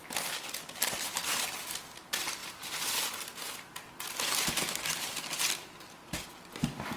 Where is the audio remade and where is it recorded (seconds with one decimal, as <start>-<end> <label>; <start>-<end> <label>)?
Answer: 0.0-7.0 recorded